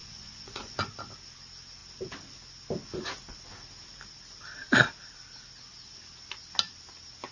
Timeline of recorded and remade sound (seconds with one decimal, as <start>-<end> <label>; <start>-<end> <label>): 0.0-0.8 remade; 0.8-7.3 recorded